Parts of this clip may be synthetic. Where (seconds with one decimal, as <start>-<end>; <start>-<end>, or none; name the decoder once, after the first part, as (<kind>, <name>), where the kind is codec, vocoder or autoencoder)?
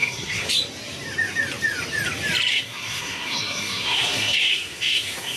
0.0-0.5 (codec, SNAC); 2.5-5.4